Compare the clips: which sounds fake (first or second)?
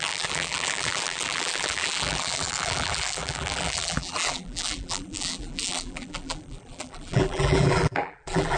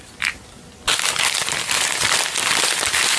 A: first